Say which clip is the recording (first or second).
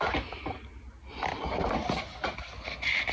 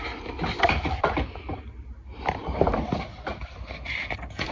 first